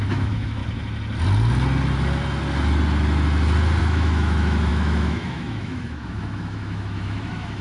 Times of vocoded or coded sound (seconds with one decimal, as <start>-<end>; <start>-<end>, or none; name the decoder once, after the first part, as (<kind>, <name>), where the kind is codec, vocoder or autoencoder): 0.0-0.6 (autoencoder, DAC-VAE); 3.8-7.6